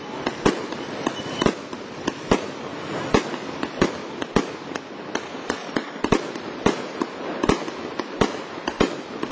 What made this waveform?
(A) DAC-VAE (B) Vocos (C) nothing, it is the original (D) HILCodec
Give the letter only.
C